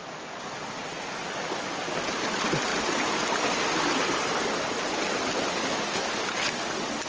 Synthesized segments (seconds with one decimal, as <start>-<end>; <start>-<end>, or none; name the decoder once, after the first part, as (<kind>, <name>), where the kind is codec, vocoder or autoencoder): none